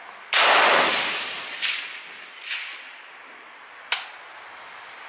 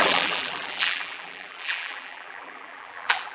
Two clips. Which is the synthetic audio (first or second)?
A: second